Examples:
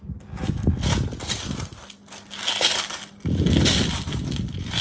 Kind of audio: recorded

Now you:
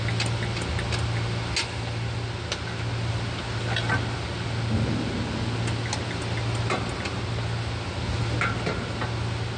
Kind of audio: recorded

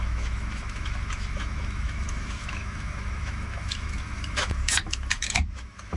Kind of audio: remade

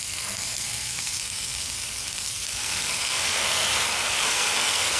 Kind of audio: remade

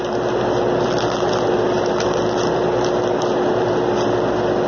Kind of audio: recorded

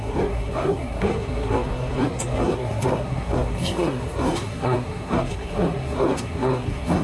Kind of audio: remade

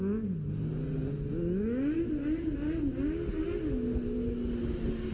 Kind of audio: recorded